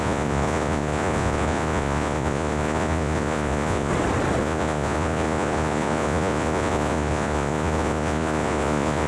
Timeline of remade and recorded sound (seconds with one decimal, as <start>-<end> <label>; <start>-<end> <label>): 0.0-3.9 remade; 3.9-4.4 recorded; 4.4-9.1 remade

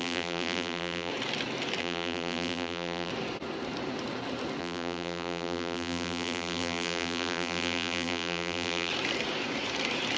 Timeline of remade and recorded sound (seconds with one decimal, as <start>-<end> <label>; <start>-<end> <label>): 0.0-1.1 remade; 1.1-1.8 recorded; 1.8-3.1 remade; 3.1-4.6 recorded; 4.6-8.9 remade; 8.9-10.2 recorded

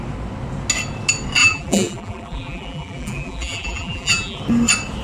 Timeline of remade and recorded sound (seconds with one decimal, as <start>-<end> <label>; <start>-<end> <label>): 0.0-1.4 recorded; 1.4-4.4 remade; 4.4-5.0 recorded

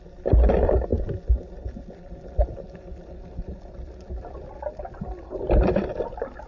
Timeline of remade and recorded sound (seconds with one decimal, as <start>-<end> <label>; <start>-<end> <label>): 0.0-6.5 recorded

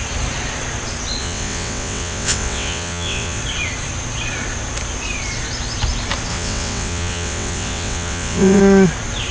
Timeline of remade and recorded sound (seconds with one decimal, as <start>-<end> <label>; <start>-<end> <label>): 0.0-1.2 recorded; 1.2-3.4 remade; 3.4-6.3 recorded; 6.3-8.6 remade; 8.6-9.3 recorded

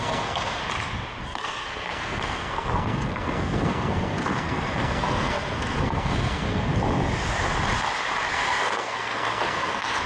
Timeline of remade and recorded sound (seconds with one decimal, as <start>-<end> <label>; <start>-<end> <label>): 0.0-0.6 remade; 0.6-1.2 recorded; 1.2-6.7 remade; 6.7-8.3 recorded; 8.3-10.1 remade